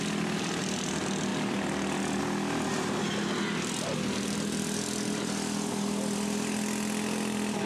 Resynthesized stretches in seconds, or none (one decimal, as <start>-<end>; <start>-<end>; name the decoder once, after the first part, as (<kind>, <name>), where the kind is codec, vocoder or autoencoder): none